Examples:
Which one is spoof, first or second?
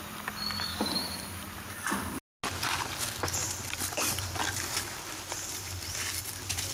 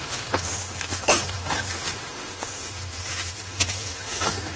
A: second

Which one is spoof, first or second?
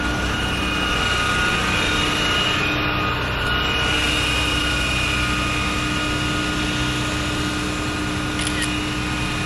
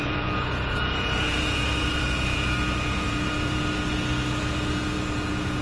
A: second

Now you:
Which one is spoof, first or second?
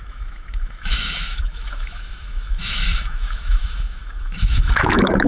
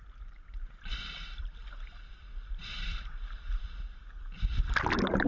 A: first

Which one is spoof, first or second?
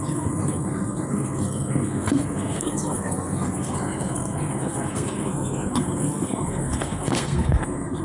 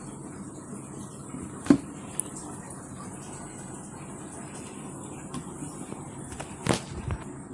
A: first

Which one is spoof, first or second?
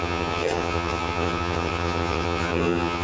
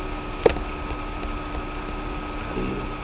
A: first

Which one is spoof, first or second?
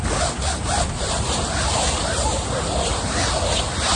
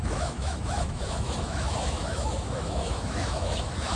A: second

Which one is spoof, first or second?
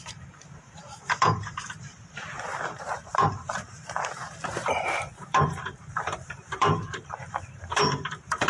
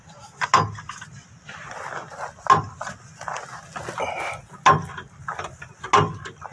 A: first